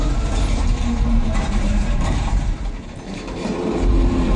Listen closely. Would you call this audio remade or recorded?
remade